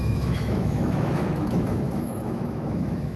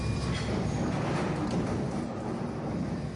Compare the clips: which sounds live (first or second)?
second